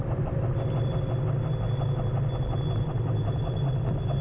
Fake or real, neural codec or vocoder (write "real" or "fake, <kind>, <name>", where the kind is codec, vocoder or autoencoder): real